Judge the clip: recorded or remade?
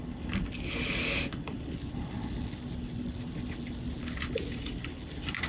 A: recorded